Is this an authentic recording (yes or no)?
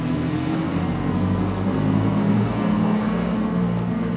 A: no